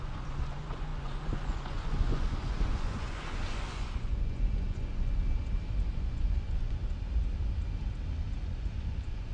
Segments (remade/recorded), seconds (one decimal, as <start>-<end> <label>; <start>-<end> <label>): 0.0-5.2 remade; 5.2-5.9 recorded; 5.9-6.8 remade; 6.8-8.4 recorded; 8.4-9.3 remade